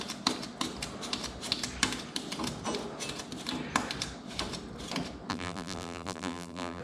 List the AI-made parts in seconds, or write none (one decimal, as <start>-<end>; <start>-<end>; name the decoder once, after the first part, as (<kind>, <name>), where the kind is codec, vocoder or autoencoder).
5.3-6.8 (vocoder, BigVGAN v2)